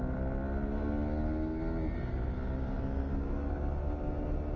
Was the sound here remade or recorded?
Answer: recorded